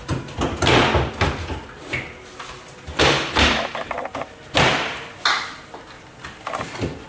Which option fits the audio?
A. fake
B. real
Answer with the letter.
B